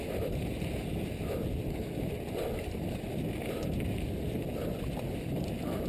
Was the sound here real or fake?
real